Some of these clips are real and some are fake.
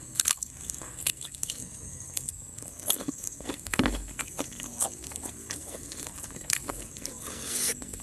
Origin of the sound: fake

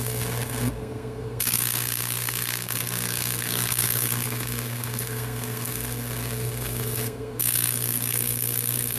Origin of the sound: fake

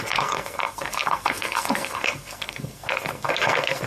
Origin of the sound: fake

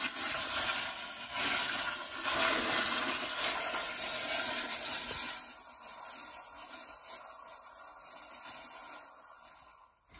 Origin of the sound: real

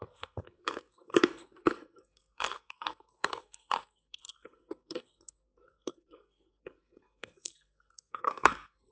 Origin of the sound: fake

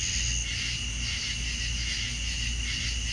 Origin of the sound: real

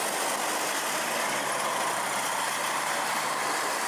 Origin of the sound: real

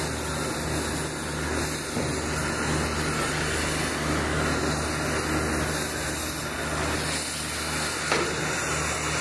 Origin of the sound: real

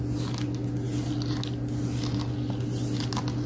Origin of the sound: real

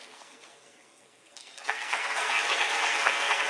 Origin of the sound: fake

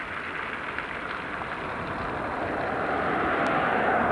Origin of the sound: real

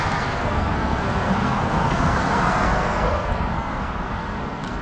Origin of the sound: fake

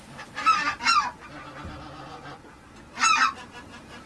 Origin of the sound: real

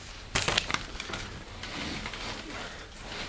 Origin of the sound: real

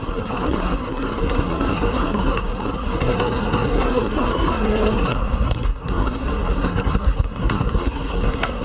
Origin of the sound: fake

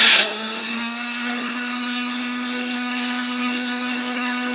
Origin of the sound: fake